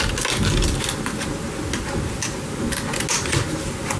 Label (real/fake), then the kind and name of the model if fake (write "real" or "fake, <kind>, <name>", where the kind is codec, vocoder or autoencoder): real